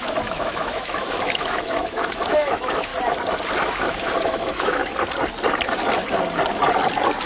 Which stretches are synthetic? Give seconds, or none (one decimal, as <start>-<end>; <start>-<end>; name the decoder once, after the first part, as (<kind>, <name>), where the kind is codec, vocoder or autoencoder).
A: 0.0-2.9 (autoencoder, DAC-VAE); 3.8-4.8